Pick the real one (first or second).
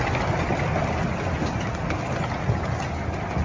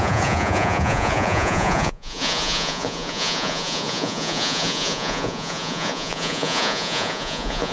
first